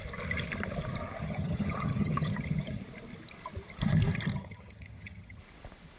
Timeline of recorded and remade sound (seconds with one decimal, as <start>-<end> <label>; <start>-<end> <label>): 0.0-1.2 recorded; 1.2-2.8 remade; 2.8-4.3 recorded; 4.3-5.4 remade; 5.4-6.0 recorded